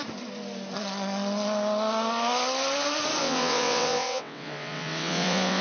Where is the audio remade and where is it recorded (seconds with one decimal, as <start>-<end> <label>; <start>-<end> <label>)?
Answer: 0.0-3.2 recorded; 3.2-5.6 remade